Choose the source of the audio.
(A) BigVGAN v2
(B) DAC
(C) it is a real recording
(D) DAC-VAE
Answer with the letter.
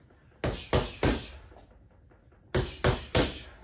C